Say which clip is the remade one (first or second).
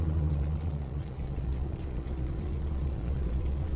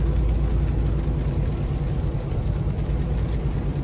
first